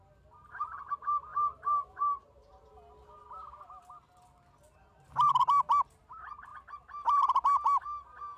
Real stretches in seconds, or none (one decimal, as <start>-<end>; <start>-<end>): 0.0-8.4